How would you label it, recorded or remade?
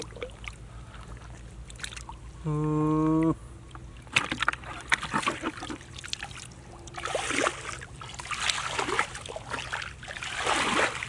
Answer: recorded